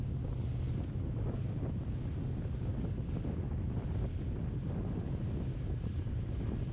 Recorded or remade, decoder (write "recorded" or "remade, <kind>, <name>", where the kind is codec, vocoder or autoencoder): recorded